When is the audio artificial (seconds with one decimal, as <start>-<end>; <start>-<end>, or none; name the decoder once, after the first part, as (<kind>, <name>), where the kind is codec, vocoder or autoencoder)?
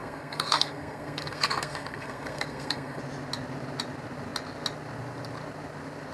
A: 0.0-3.0 (codec, SNAC)